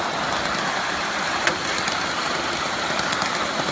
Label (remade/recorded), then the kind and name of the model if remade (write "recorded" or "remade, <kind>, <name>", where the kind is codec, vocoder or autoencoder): recorded